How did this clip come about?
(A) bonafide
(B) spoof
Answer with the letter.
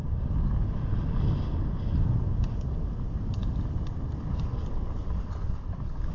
A